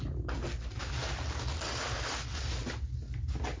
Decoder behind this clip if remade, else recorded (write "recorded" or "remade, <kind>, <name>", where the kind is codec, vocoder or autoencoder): recorded